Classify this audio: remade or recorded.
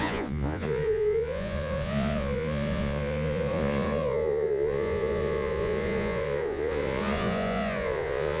remade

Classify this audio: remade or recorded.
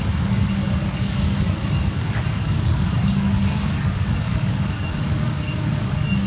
remade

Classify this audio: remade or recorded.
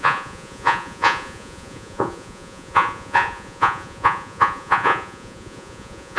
remade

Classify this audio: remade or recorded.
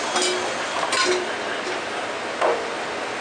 recorded